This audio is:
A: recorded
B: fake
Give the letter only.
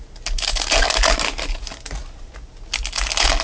A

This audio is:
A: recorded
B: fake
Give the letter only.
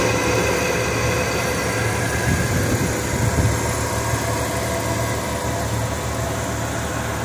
A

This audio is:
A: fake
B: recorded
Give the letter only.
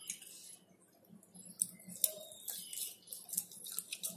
B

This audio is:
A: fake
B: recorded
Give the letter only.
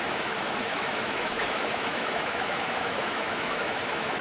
A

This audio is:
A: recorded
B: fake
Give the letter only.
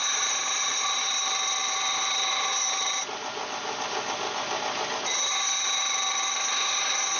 A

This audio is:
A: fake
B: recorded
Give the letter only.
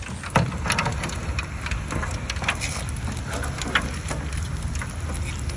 B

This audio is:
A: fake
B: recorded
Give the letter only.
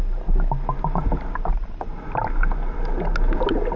B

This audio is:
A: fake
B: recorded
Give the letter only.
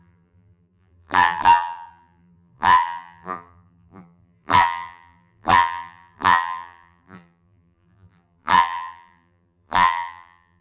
A